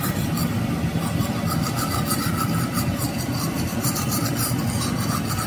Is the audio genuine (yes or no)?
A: yes